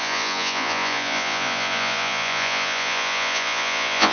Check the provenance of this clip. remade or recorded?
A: remade